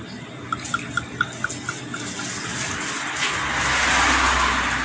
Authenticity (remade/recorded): recorded